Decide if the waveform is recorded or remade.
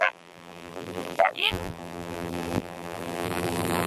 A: remade